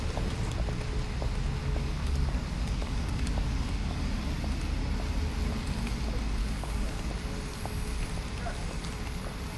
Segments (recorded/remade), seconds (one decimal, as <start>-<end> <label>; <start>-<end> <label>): 0.0-1.6 recorded; 1.6-4.2 remade; 4.2-6.4 recorded; 6.4-7.1 remade; 7.1-9.6 recorded